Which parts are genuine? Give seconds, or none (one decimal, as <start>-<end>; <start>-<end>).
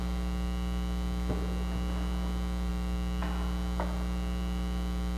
0.0-5.2